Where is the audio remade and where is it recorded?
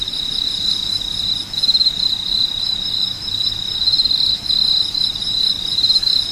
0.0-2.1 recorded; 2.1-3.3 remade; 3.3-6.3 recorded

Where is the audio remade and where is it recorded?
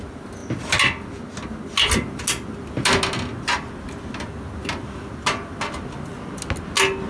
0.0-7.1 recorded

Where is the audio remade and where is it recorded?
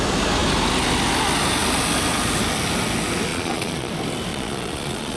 0.0-3.3 recorded; 3.3-3.9 remade; 3.9-4.3 recorded; 4.3-5.2 remade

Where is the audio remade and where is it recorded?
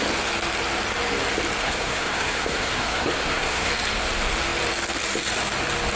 0.0-1.6 recorded; 1.6-3.7 remade; 3.7-6.0 recorded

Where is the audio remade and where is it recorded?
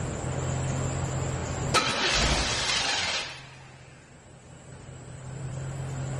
0.0-1.4 recorded; 1.4-1.9 remade; 1.9-2.5 recorded; 2.5-3.4 remade; 3.4-4.7 recorded; 4.7-5.5 remade; 5.5-6.2 recorded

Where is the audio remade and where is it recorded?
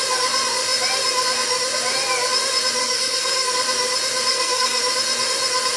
0.0-2.8 recorded; 2.8-3.5 remade; 3.5-4.3 recorded; 4.3-4.8 remade; 4.8-5.8 recorded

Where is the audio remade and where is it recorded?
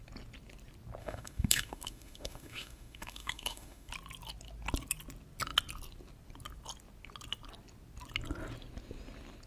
0.0-1.0 recorded; 1.0-3.9 remade; 3.9-9.5 recorded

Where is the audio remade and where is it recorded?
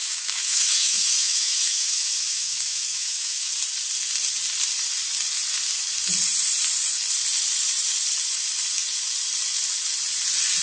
0.0-3.5 remade; 3.5-10.6 recorded